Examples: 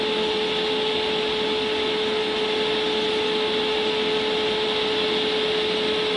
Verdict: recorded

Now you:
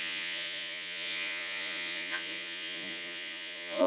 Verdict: remade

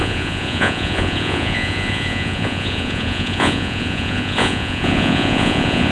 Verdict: remade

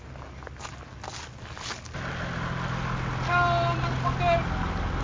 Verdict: recorded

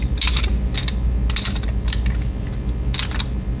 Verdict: recorded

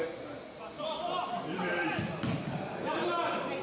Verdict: recorded